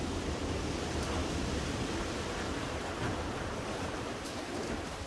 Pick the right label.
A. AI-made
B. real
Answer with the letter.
B